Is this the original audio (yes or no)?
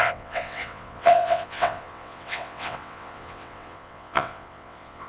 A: no